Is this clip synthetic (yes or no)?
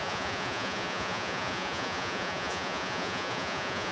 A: yes